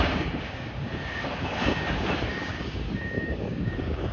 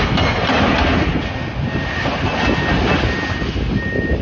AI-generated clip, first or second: first